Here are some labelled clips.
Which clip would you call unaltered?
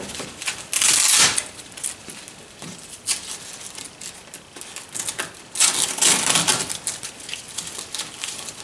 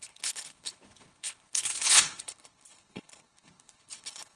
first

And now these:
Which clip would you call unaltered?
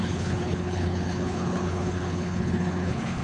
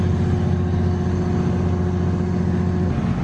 second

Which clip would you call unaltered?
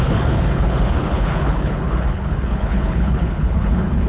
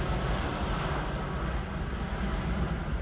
second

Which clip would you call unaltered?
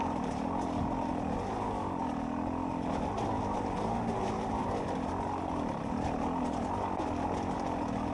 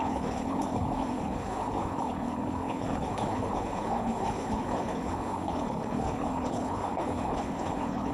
first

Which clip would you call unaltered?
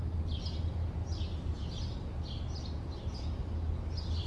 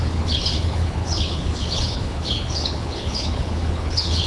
first